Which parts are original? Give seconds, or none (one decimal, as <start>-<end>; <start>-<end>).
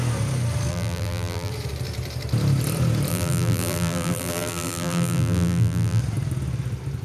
0.0-0.7; 1.5-3.1; 6.0-7.0